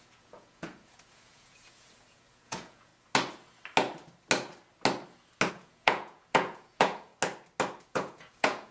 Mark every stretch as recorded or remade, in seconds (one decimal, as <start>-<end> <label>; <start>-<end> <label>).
0.0-2.9 remade; 2.9-5.5 recorded; 5.5-7.1 remade; 7.1-7.8 recorded; 7.8-8.7 remade